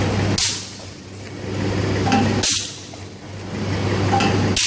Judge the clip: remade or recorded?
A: recorded